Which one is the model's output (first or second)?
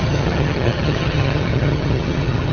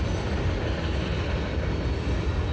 first